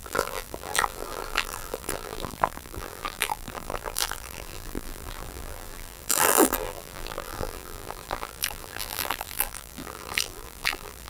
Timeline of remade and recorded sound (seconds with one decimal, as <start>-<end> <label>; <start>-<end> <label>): 0.0-11.1 remade